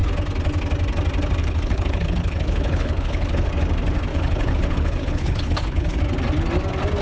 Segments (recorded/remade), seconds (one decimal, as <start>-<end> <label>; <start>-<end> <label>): 0.0-1.4 recorded; 1.4-3.5 remade; 3.5-4.1 recorded; 4.1-6.0 remade; 6.0-7.0 recorded